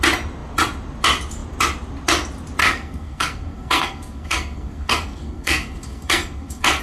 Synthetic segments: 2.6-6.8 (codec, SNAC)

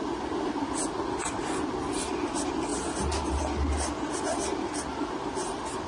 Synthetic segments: none

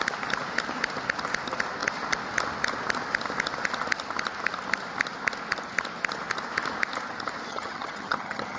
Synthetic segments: 7.5-8.6 (vocoder, HiFi-GAN)

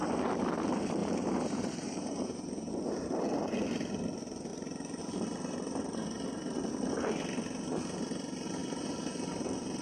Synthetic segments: 1.0-2.7 (vocoder, BigVGAN v2); 4.5-5.0; 8.6-9.8

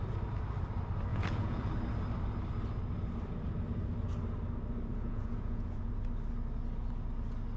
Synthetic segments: 1.1-1.7 (vocoder, Vocos); 4.9-5.9

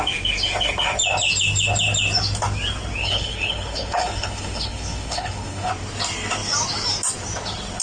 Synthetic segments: 3.0-5.7 (codec, HILCodec)

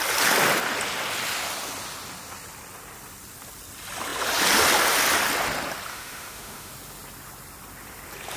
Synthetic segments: 5.9-6.7 (autoencoder, DAC-VAE)

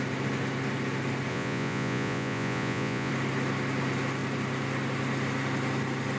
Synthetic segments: 1.3-3.1 (vocoder, Vocos)